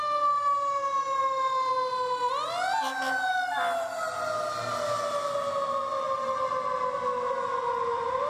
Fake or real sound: real